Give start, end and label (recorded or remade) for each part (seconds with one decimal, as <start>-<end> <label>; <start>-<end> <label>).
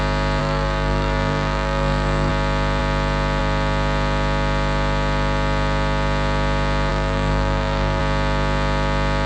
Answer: 0.0-0.4 recorded; 0.4-2.3 remade; 2.3-6.9 recorded; 6.9-8.0 remade; 8.0-9.3 recorded